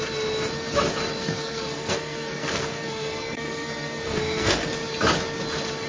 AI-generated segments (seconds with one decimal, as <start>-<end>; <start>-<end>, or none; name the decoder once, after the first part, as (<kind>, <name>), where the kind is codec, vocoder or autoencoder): 1.2-4.7 (codec, SNAC)